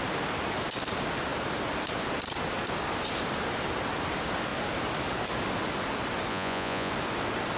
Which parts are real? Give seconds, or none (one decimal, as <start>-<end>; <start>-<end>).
0.0-6.3; 6.9-7.6